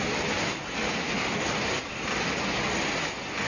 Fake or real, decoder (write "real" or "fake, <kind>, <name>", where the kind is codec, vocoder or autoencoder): real